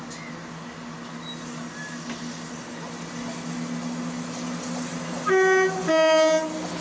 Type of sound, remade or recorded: recorded